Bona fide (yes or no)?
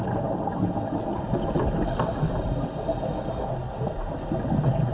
yes